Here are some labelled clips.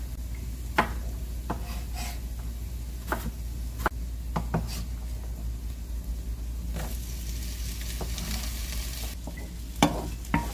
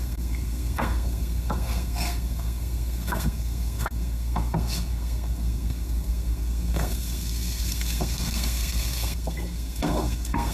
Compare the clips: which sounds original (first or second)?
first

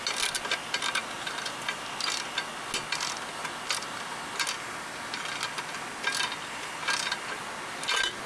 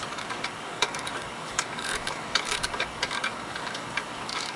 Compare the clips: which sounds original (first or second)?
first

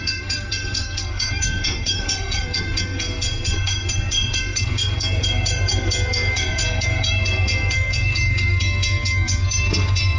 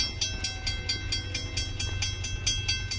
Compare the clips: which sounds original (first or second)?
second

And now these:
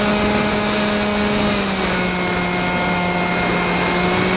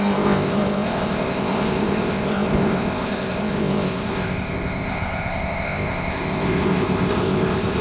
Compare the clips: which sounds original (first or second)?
first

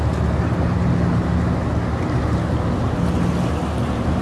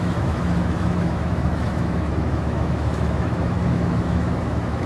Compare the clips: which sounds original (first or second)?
first